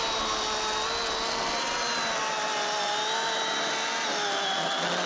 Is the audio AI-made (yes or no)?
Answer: no